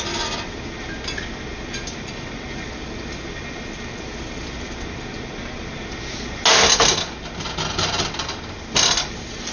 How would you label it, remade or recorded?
recorded